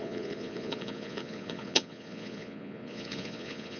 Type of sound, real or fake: fake